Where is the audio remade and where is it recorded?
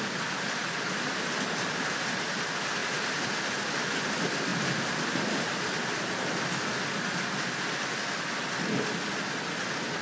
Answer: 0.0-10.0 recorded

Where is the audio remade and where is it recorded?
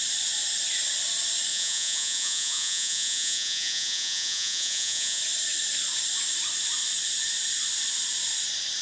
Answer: 0.0-1.5 recorded; 1.5-5.2 remade; 5.2-8.8 recorded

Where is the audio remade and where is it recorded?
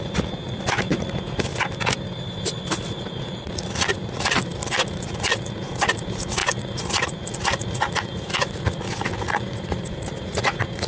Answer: 0.0-1.5 remade; 1.5-2.7 recorded; 2.7-10.9 remade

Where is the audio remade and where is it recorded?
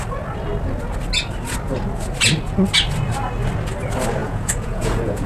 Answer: 0.0-4.2 recorded; 4.2-5.3 remade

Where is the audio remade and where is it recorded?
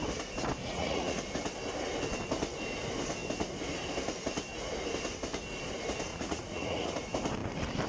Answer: 0.0-0.6 recorded; 0.6-1.2 remade; 1.2-6.1 recorded; 6.1-6.9 remade; 6.9-7.9 recorded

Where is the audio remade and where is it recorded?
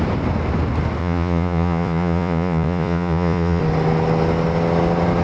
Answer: 0.0-1.0 recorded; 1.0-3.6 remade; 3.6-5.2 recorded